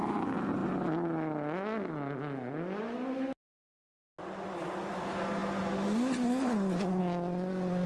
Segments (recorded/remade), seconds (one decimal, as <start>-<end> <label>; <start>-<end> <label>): 0.0-7.9 recorded